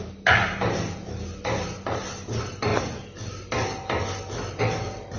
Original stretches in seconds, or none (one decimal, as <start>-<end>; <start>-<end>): 0.0-5.2